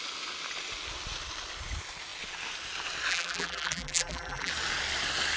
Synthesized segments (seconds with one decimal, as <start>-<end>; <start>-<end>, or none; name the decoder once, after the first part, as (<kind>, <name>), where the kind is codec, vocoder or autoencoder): 3.1-4.5 (vocoder, BigVGAN v2)